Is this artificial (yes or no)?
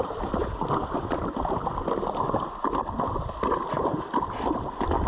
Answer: no